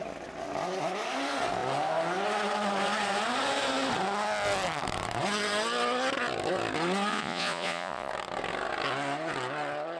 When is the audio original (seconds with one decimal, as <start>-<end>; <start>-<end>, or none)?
0.0-7.1; 8.1-10.0